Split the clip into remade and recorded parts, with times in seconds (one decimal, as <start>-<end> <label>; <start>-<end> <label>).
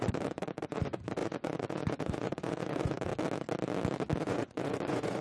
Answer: 0.0-3.1 remade; 3.1-4.2 recorded; 4.2-5.2 remade